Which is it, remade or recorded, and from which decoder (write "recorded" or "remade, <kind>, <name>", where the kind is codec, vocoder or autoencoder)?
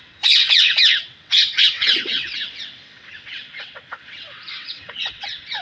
remade, vocoder, WaveNeXt